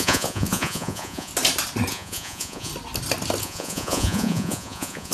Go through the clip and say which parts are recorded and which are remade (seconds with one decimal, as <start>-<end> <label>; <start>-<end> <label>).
0.0-1.3 remade; 1.3-1.9 recorded; 1.9-2.7 remade; 2.7-3.4 recorded; 3.4-5.1 remade